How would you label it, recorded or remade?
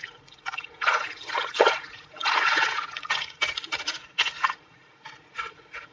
remade